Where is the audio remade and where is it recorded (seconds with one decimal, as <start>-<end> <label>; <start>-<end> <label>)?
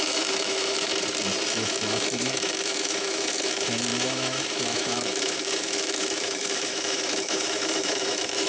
0.0-0.9 remade; 0.9-1.5 recorded; 1.5-8.5 remade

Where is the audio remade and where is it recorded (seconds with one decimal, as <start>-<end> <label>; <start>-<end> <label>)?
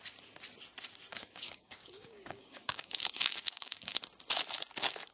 0.0-1.1 recorded; 1.1-4.0 remade; 4.0-5.1 recorded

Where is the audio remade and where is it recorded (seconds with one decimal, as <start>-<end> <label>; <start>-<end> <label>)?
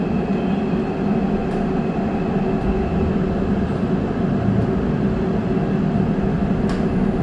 0.0-7.2 recorded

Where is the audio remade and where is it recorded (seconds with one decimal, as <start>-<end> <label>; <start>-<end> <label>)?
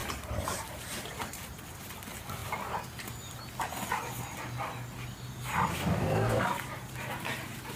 0.0-5.7 recorded; 5.7-6.4 remade; 6.4-7.8 recorded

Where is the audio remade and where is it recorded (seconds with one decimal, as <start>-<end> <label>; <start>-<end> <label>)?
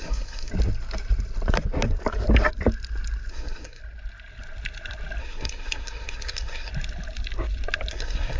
0.0-0.5 remade; 0.5-3.3 recorded; 3.3-3.8 remade; 3.8-5.2 recorded; 5.2-6.7 remade; 6.7-7.9 recorded; 7.9-8.4 remade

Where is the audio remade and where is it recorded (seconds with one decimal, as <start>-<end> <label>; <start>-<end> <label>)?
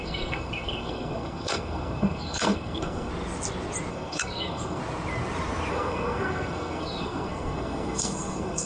0.0-3.1 remade; 3.1-3.9 recorded; 3.9-4.8 remade; 4.8-5.7 recorded; 5.7-8.7 remade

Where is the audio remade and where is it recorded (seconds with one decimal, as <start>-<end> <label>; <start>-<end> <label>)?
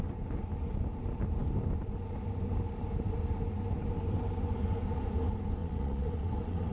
0.0-5.6 recorded; 5.6-6.7 remade